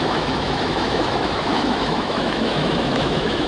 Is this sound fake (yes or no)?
yes